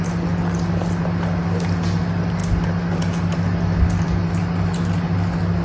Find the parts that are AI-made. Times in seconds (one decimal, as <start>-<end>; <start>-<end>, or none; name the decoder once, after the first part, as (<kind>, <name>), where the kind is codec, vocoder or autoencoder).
none